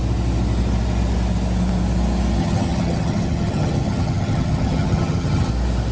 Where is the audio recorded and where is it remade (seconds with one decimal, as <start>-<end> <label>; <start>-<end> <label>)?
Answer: 0.0-2.4 recorded; 2.4-5.5 remade; 5.5-5.9 recorded

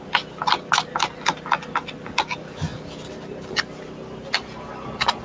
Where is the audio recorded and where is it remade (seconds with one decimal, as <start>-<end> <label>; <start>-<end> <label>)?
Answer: 0.0-5.2 recorded

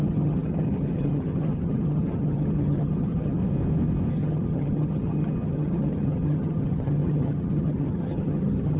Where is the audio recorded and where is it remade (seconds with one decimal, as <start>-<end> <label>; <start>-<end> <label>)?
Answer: 0.0-3.4 remade; 3.4-4.1 recorded; 4.1-8.8 remade

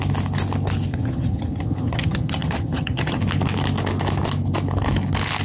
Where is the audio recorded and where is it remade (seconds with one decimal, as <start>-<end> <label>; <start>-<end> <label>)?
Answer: 0.0-0.9 recorded; 0.9-3.2 remade; 3.2-5.4 recorded

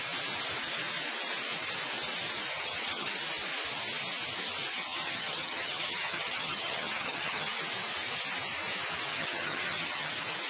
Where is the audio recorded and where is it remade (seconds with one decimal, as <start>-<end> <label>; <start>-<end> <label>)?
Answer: 0.0-2.5 recorded; 2.5-3.1 remade; 3.1-4.7 recorded; 4.7-7.6 remade; 7.6-9.1 recorded; 9.1-10.1 remade; 10.1-10.5 recorded

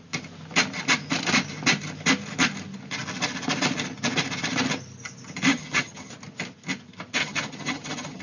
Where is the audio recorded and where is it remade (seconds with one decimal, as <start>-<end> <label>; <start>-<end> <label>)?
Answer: 0.0-5.5 recorded; 5.5-6.1 remade; 6.1-7.2 recorded; 7.2-8.2 remade